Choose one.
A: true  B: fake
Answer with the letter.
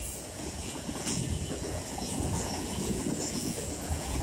B